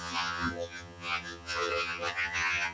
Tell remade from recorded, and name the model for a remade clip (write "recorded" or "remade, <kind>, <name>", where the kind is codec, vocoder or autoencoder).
remade, vocoder, HiFi-GAN